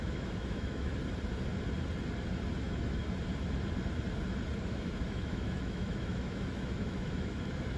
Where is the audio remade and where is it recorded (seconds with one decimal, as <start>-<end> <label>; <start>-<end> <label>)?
0.0-0.9 remade; 0.9-2.6 recorded; 2.6-3.0 remade; 3.0-4.6 recorded; 4.6-7.8 remade